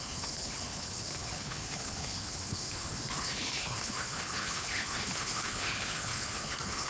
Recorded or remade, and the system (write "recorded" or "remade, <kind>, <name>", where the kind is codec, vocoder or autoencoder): remade, codec, HILCodec